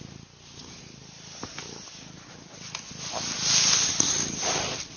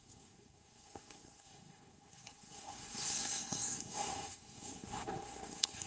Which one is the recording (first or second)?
first